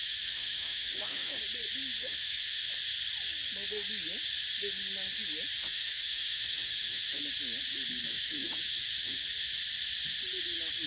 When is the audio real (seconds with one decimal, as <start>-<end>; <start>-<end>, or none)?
1.4-2.0; 2.7-5.6; 7.2-8.1; 9.2-10.9